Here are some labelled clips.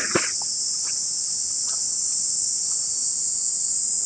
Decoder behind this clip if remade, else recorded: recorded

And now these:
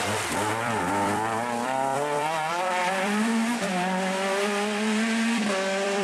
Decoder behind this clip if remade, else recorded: remade, vocoder, BigVGAN v2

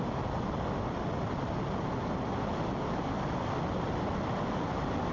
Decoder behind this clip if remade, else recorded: recorded